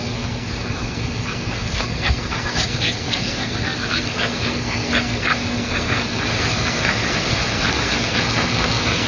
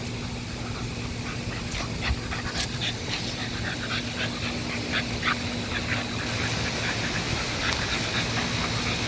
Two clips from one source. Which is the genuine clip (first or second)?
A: second